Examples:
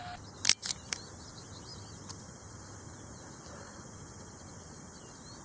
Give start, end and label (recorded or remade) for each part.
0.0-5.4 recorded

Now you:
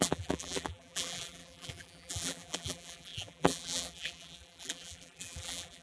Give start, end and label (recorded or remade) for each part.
0.0-5.8 remade

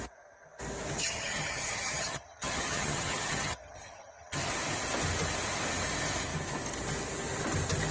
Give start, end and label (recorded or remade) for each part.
0.0-1.0 recorded; 1.0-4.5 remade; 4.5-7.9 recorded

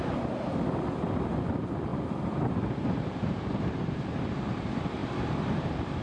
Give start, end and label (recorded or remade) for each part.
0.0-1.9 recorded; 1.9-4.3 remade; 4.3-5.0 recorded; 5.0-6.0 remade

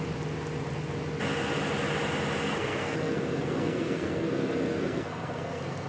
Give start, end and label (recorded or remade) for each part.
0.0-2.5 recorded; 2.5-5.9 remade

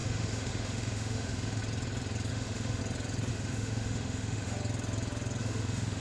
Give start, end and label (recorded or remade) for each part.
0.0-1.6 remade; 1.6-2.3 recorded; 2.3-2.8 remade; 2.8-3.3 recorded; 3.3-4.6 remade; 4.6-5.4 recorded; 5.4-6.0 remade

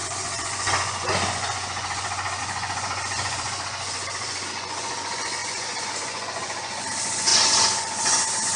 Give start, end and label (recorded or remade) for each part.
0.0-8.6 remade

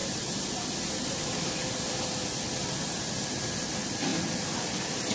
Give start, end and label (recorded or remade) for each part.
0.0-3.1 remade; 3.1-4.1 recorded; 4.1-5.1 remade